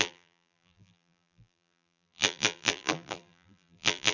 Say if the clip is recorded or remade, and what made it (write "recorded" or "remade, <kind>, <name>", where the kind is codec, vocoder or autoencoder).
remade, vocoder, BigVGAN v2